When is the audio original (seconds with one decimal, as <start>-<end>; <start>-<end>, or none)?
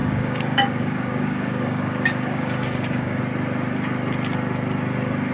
3.2-5.3